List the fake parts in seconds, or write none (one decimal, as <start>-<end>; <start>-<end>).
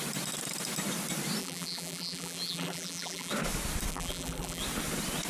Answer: 1.4-3.3; 3.9-4.6